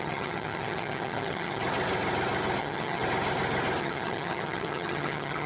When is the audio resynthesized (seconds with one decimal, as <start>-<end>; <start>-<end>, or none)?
0.0-1.6; 2.6-3.0; 3.8-5.5